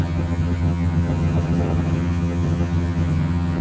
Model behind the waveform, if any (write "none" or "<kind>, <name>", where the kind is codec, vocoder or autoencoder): vocoder, HiFi-GAN